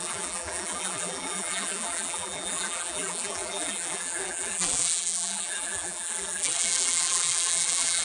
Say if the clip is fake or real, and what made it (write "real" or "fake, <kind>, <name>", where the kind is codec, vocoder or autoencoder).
fake, vocoder, BigVGAN v2